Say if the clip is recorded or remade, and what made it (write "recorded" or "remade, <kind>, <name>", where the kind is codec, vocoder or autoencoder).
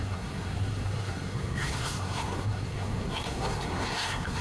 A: remade, codec, SNAC